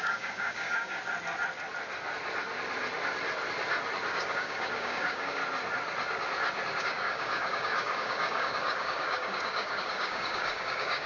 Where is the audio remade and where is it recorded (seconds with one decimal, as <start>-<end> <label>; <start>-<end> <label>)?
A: 0.0-1.0 remade; 1.0-4.1 recorded; 4.1-5.4 remade; 5.4-6.8 recorded; 6.8-11.1 remade